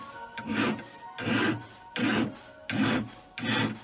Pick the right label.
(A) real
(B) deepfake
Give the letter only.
A